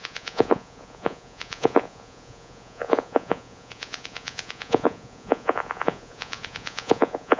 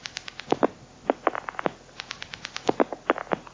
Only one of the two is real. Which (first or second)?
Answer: second